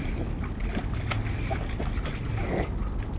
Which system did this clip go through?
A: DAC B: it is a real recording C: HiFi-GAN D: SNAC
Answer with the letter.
B